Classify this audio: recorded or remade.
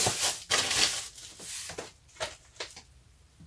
recorded